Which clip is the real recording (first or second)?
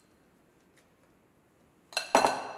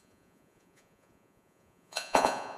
first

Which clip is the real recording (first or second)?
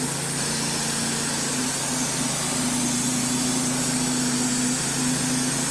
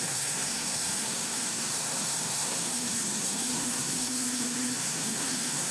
first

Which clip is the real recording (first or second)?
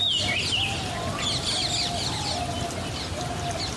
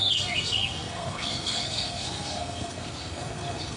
first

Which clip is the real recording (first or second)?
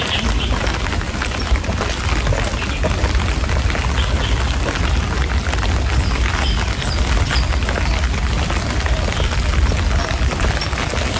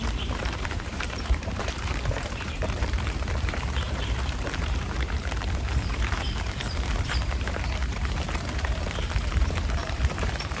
first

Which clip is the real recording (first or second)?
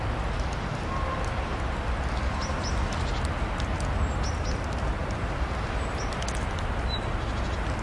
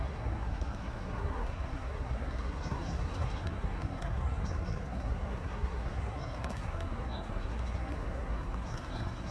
first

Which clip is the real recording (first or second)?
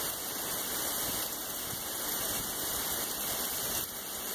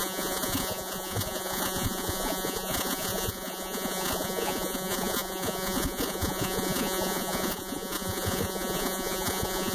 first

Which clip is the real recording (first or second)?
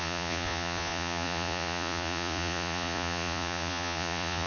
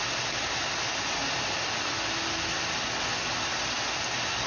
second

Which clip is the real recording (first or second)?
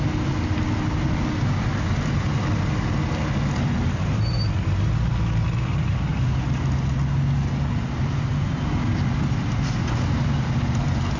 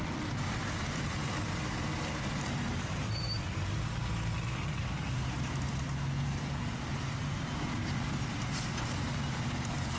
first